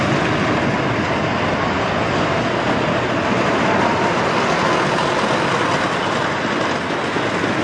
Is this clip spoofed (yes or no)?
no